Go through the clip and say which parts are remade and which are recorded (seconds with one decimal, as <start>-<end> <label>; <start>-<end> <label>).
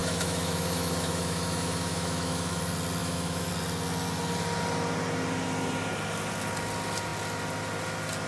0.0-2.6 remade; 2.6-3.0 recorded; 3.0-3.5 remade; 3.5-8.3 recorded